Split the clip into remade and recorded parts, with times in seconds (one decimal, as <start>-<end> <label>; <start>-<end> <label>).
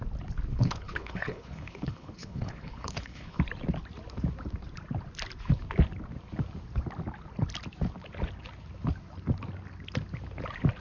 0.0-0.5 recorded; 0.5-3.4 remade; 3.4-10.8 recorded